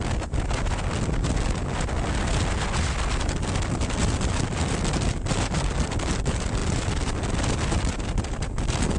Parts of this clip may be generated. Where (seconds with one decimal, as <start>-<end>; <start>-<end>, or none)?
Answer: none